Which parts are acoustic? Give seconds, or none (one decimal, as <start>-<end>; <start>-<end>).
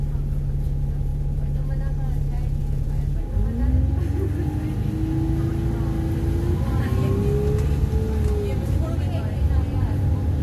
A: 0.0-2.6; 3.2-10.4